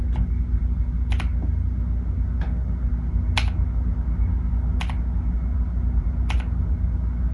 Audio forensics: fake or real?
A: real